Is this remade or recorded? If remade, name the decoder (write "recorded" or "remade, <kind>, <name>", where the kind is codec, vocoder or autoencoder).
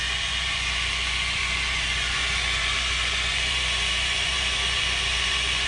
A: remade, vocoder, Vocos